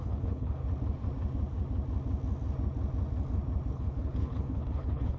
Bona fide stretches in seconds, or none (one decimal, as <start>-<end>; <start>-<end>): 0.6-3.7